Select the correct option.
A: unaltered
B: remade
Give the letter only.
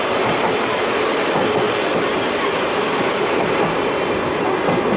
A